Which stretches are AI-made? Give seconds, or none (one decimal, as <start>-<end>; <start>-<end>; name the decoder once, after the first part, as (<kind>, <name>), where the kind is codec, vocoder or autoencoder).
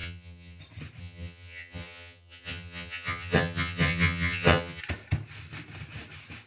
0.0-0.6 (vocoder, HiFi-GAN); 1.0-4.8